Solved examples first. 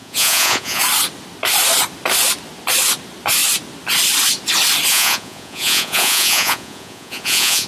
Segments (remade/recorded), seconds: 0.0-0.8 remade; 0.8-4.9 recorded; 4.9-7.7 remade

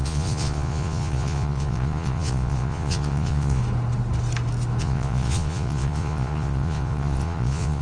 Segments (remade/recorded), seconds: 0.0-3.6 remade; 3.6-4.8 recorded; 4.8-7.8 remade

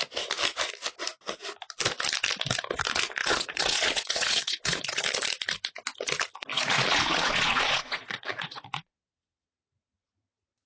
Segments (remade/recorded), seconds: 0.0-3.2 recorded; 3.2-5.0 remade; 5.0-6.5 recorded; 6.5-9.8 remade; 9.8-10.7 recorded

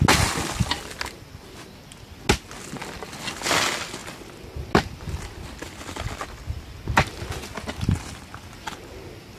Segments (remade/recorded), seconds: 0.0-9.4 recorded

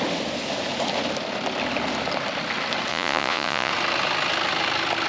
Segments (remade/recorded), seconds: 0.0-2.9 recorded; 2.9-3.7 remade; 3.7-5.1 recorded

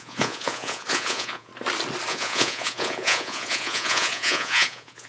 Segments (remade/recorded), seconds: 0.0-1.5 remade; 1.5-2.1 recorded; 2.1-5.1 remade

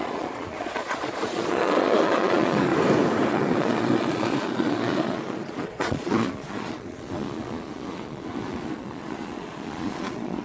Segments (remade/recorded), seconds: 0.0-2.7 remade; 2.7-3.3 recorded; 3.3-10.4 remade

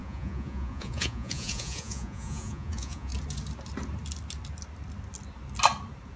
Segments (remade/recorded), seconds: 0.0-3.1 remade; 3.1-6.2 recorded